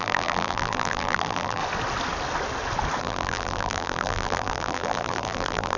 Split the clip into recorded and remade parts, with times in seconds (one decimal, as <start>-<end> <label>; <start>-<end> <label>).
0.0-1.6 remade; 1.6-3.0 recorded; 3.0-5.8 remade